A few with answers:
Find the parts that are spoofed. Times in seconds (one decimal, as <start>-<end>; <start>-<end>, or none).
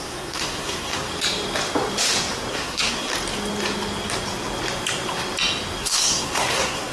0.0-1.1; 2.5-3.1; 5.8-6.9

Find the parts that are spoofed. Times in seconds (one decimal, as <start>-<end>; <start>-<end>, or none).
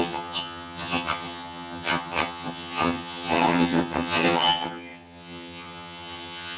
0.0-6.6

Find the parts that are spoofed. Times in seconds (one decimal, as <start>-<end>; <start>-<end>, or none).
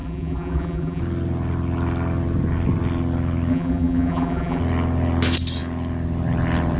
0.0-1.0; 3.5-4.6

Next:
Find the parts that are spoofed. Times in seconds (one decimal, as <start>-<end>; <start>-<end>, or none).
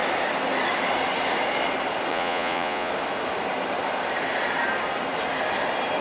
2.1-2.9